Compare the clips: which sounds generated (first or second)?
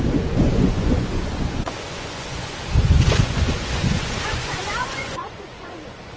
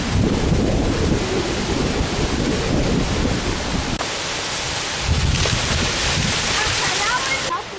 first